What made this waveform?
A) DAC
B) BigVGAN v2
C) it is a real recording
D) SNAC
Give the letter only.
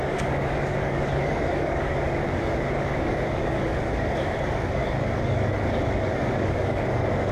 A